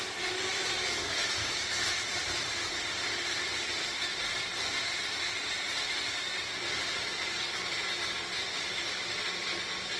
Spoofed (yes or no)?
no